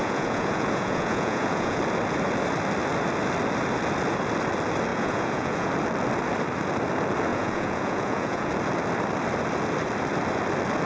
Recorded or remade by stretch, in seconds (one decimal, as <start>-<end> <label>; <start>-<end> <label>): 0.0-1.8 remade; 1.8-4.9 recorded; 4.9-5.7 remade; 5.7-7.3 recorded; 7.3-8.5 remade; 8.5-10.9 recorded